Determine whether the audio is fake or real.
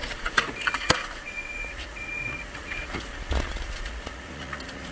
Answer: fake